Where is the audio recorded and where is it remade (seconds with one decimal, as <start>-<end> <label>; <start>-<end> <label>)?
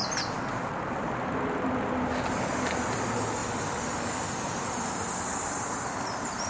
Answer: 0.0-1.0 remade; 1.0-3.4 recorded; 3.4-6.5 remade